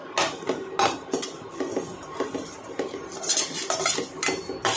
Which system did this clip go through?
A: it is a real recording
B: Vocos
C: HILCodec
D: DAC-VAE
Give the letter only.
A